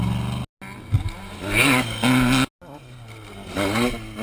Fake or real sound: real